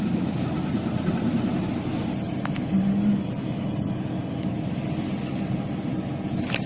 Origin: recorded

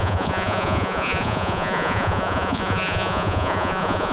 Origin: remade